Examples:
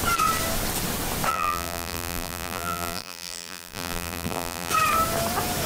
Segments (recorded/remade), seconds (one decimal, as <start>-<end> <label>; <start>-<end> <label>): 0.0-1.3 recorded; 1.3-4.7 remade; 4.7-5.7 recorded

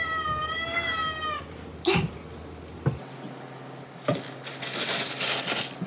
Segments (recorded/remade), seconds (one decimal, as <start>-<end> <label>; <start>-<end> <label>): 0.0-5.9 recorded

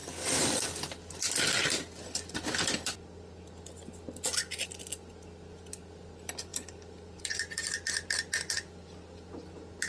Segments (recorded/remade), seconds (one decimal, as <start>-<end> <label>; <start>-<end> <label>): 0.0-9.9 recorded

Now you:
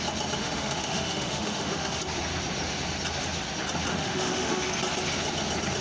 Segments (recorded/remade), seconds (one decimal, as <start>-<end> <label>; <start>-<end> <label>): 0.0-0.4 recorded; 0.4-2.0 remade; 2.0-3.9 recorded; 3.9-4.7 remade; 4.7-5.8 recorded